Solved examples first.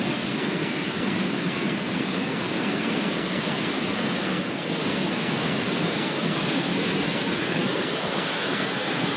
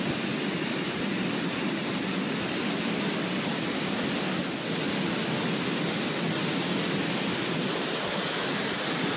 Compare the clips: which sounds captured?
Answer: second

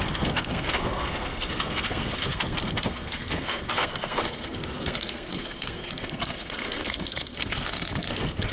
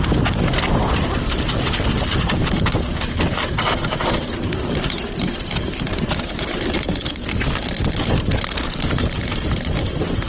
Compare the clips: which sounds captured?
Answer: second